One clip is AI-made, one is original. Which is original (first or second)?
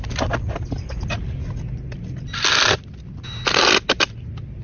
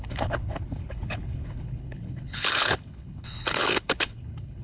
first